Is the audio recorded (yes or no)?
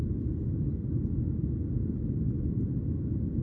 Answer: yes